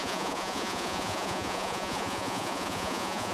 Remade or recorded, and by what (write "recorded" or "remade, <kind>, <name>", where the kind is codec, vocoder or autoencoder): remade, vocoder, Vocos